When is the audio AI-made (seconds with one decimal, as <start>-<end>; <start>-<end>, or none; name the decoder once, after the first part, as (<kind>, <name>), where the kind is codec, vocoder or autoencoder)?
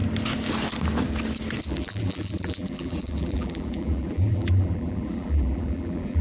1.7-6.2 (vocoder, BigVGAN v2)